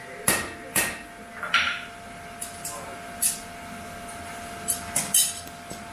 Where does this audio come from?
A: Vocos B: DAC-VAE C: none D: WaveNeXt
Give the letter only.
C